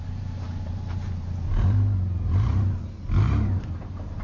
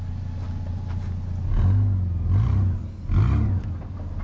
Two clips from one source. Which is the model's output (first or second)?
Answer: first